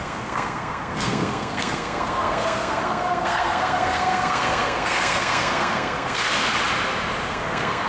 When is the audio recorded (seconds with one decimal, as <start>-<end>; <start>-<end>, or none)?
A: 6.5-7.3